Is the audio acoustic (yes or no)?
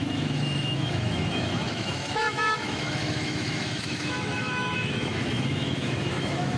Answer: no